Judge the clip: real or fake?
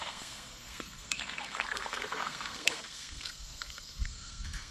fake